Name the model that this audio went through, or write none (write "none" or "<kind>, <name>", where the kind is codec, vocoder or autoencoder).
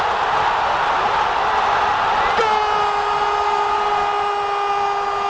none